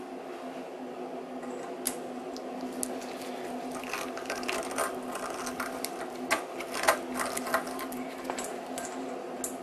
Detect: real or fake real